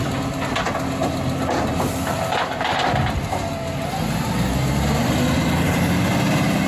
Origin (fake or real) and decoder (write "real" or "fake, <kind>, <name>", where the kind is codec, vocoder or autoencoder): real